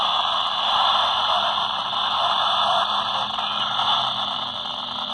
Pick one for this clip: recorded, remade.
recorded